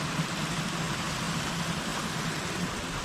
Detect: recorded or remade recorded